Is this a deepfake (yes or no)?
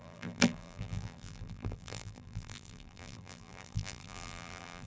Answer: yes